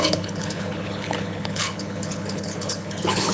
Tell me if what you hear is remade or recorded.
remade